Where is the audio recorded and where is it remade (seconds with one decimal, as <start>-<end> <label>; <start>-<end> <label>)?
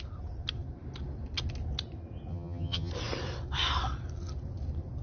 0.0-2.3 recorded; 2.3-2.9 remade; 2.9-5.0 recorded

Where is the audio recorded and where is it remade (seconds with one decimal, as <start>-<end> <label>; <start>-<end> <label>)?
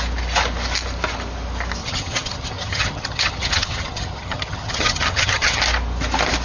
0.0-1.8 recorded; 1.8-5.6 remade; 5.6-6.4 recorded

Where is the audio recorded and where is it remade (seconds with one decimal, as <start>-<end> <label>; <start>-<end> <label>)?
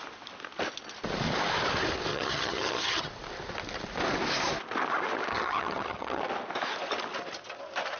0.0-2.1 recorded; 2.1-3.1 remade; 3.1-5.3 recorded; 5.3-6.2 remade; 6.2-8.0 recorded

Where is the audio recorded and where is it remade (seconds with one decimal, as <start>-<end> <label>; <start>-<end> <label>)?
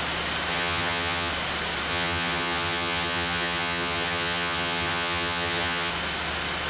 0.0-0.5 recorded; 0.5-1.3 remade; 1.3-1.9 recorded; 1.9-5.9 remade; 5.9-6.7 recorded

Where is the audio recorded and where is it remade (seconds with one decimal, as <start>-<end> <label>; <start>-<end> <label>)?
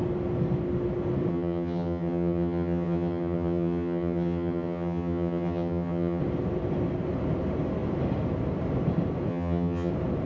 0.0-1.3 recorded; 1.3-6.2 remade; 6.2-9.3 recorded; 9.3-9.9 remade; 9.9-10.3 recorded